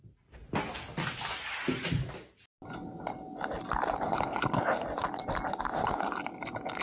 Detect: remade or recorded recorded